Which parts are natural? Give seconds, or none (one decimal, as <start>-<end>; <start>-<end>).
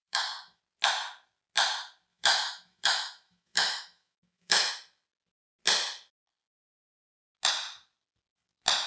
0.6-2.1; 4.7-8.9